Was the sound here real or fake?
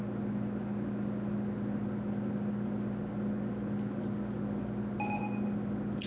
real